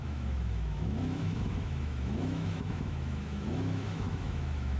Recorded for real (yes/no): no